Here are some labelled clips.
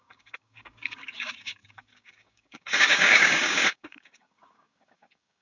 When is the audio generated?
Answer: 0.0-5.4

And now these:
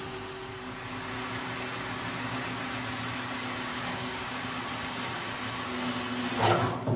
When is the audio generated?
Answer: 3.7-4.5

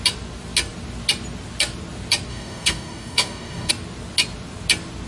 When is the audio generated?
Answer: 2.3-3.7

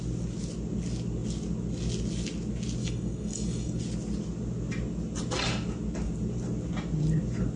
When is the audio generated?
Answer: 2.8-3.8

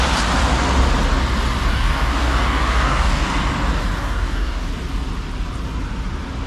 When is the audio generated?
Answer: 1.7-3.3; 4.0-4.7

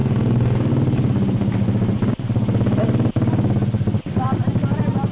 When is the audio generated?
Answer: 0.0-0.7